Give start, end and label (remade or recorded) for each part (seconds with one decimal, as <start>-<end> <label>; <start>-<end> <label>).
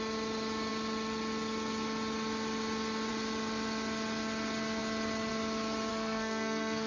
0.0-5.9 recorded; 5.9-6.9 remade